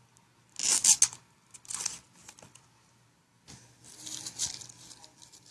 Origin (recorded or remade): recorded